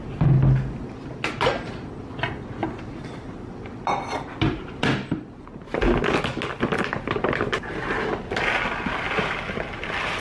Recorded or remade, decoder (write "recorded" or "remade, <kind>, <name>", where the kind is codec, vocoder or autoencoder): recorded